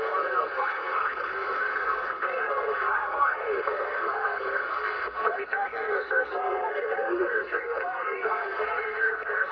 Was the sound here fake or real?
fake